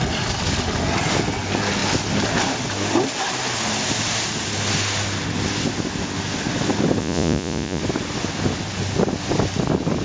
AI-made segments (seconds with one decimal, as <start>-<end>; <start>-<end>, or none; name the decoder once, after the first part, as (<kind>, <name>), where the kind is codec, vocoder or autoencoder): 7.0-7.8 (vocoder, Vocos)